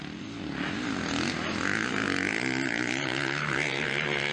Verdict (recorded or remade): recorded